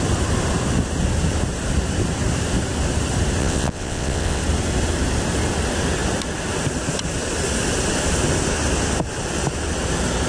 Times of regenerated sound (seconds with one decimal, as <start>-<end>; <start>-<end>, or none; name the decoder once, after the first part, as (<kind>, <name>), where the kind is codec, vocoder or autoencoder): 3.4-4.4 (vocoder, WaveNeXt)